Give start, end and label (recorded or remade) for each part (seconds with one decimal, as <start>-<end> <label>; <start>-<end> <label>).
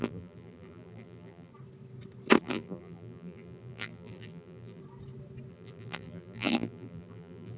0.0-1.5 remade; 1.5-2.4 recorded; 2.4-4.8 remade; 4.8-5.5 recorded; 5.5-7.6 remade